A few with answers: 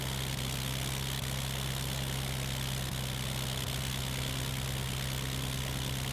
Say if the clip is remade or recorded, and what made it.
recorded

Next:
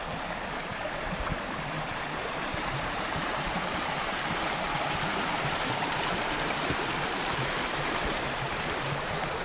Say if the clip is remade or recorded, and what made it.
remade, vocoder, BigVGAN v2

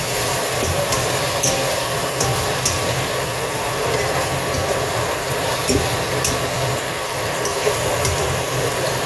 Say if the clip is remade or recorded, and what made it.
recorded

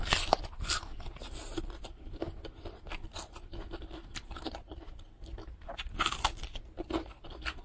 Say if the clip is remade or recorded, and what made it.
recorded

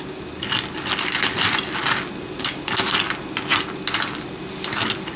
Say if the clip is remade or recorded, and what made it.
recorded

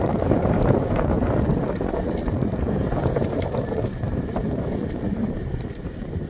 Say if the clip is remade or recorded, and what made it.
remade, vocoder, BigVGAN v2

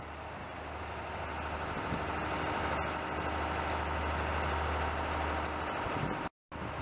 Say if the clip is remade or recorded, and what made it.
recorded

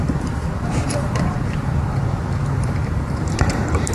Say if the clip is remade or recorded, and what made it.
remade, vocoder, BigVGAN v2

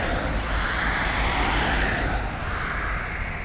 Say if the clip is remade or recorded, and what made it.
remade, vocoder, BigVGAN v2